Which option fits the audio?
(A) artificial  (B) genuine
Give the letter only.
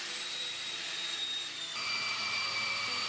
A